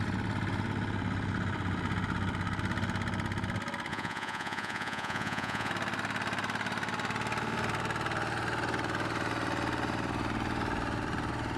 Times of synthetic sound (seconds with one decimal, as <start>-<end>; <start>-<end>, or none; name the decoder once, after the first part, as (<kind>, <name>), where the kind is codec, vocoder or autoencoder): 3.9-5.7 (vocoder, Vocos)